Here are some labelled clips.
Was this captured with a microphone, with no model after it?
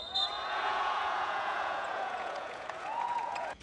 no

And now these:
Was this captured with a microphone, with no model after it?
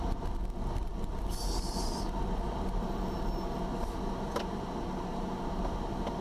yes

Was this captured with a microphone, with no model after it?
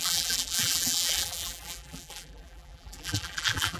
no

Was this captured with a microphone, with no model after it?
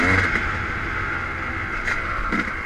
yes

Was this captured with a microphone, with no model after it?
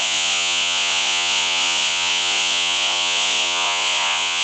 no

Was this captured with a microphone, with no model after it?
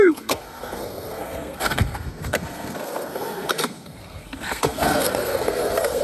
no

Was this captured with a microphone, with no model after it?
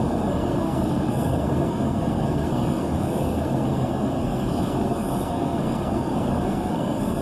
no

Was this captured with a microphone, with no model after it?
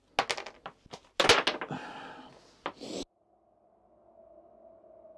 yes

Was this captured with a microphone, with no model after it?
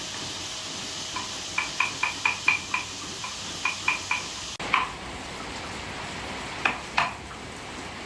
yes